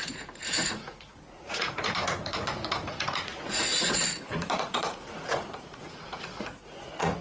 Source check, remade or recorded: remade